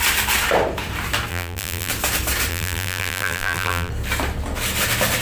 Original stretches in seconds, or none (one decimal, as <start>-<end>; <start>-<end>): 0.0-1.3; 1.9-2.5; 3.9-5.2